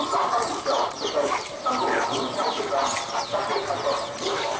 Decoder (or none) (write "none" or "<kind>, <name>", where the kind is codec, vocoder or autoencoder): none